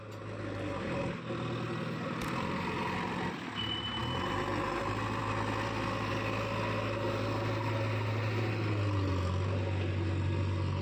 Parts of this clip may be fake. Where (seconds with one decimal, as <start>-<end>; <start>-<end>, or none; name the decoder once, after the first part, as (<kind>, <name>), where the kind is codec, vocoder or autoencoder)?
none